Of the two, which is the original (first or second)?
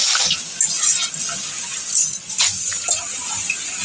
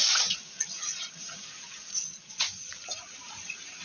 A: first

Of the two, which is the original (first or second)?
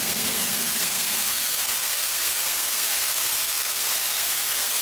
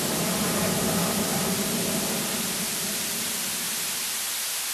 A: second